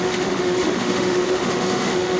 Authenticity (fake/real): fake